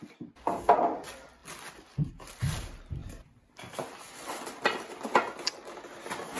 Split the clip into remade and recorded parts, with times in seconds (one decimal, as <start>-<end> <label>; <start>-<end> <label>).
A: 0.0-6.4 recorded